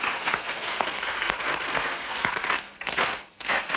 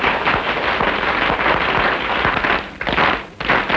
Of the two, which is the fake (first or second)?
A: first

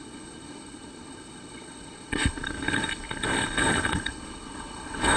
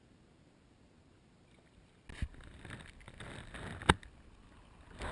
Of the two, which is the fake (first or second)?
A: first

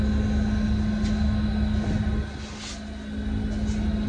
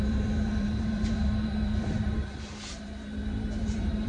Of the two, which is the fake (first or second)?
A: second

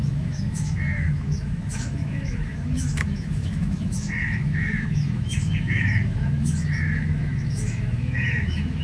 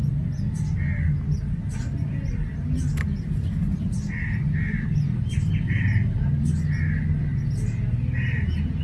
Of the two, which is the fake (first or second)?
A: first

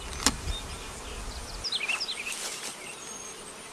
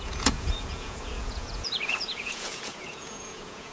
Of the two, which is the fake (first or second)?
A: second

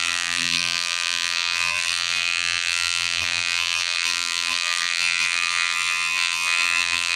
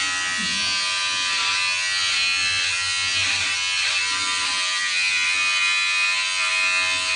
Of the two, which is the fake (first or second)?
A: first